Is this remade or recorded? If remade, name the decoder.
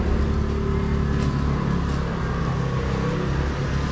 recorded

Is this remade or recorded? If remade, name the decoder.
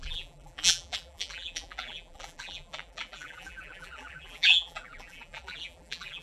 remade, vocoder, BigVGAN v2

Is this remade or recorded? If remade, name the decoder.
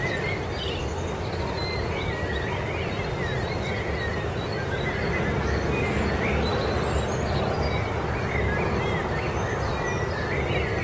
remade, vocoder, BigVGAN v2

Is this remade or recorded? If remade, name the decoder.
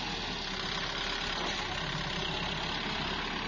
recorded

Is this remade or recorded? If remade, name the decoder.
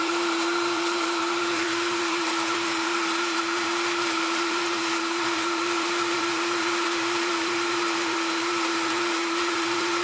remade, vocoder, BigVGAN v2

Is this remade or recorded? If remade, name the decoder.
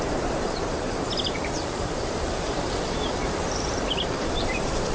remade, vocoder, BigVGAN v2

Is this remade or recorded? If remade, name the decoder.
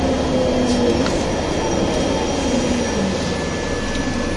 recorded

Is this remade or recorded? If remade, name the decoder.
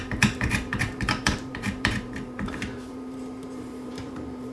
remade, vocoder, BigVGAN v2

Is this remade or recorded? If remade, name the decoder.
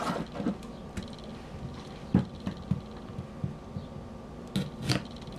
recorded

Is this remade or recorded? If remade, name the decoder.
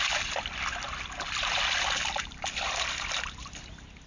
remade, vocoder, BigVGAN v2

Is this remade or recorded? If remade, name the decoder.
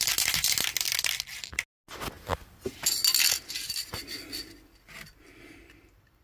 recorded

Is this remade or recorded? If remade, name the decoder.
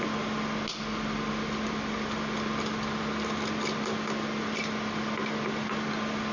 recorded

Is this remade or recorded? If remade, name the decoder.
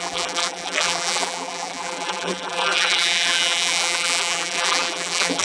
remade, vocoder, BigVGAN v2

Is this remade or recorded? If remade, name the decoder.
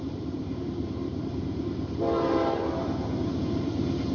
remade, vocoder, BigVGAN v2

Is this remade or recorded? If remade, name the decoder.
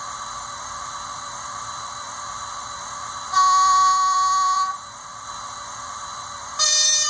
remade, vocoder, BigVGAN v2